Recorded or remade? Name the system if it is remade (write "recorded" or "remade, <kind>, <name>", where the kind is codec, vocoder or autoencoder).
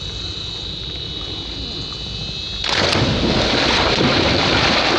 recorded